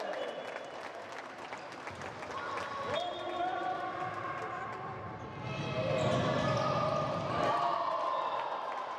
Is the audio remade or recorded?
recorded